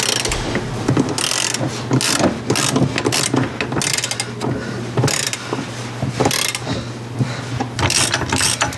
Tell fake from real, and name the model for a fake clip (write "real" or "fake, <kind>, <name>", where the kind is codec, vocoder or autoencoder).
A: real